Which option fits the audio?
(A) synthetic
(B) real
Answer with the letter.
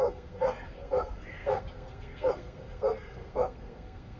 A